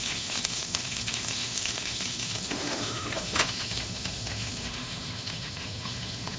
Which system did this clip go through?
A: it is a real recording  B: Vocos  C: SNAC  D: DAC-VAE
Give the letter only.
D